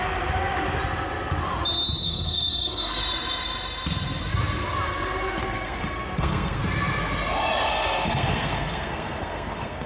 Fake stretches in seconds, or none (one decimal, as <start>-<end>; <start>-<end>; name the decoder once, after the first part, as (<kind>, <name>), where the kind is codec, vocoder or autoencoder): 2.0-3.0 (codec, SNAC); 5.4-6.6; 7.7-9.9